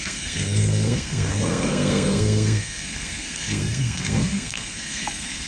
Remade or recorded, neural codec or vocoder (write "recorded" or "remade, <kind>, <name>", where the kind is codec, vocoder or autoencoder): remade, codec, SNAC